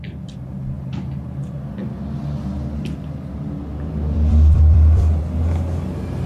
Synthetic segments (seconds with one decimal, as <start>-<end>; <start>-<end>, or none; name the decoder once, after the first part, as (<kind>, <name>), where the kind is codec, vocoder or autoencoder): 1.8-5.2 (vocoder, BigVGAN v2)